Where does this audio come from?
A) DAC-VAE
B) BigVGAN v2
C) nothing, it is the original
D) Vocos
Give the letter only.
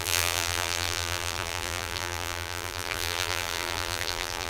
B